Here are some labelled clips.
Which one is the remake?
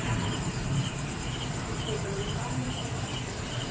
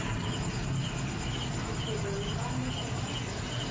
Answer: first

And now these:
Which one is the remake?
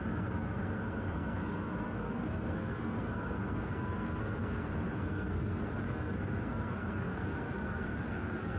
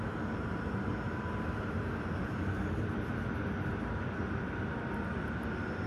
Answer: first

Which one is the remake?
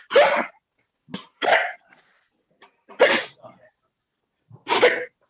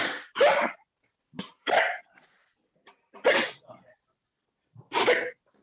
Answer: second